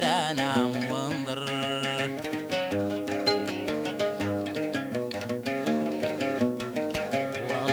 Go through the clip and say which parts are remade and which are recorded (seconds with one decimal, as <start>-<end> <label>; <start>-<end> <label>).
0.0-7.7 remade